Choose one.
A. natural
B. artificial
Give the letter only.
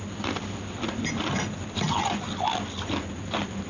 A